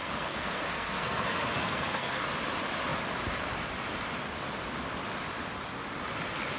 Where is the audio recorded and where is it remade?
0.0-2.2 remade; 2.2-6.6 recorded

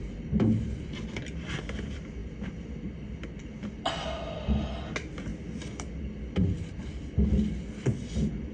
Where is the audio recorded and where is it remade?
0.0-8.5 recorded